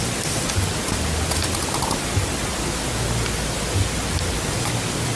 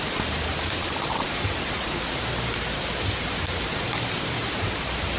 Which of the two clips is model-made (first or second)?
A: second